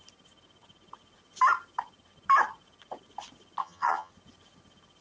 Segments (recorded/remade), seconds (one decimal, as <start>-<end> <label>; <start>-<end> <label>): 0.0-3.6 recorded; 3.6-4.1 remade; 4.1-5.0 recorded